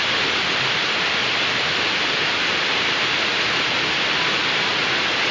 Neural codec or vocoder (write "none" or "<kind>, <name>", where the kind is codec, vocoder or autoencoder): none